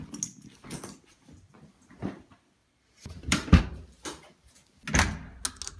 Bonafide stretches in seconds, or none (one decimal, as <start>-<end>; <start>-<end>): 0.0-2.6; 3.6-5.8